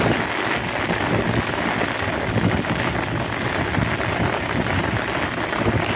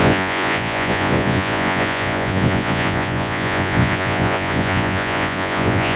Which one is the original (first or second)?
first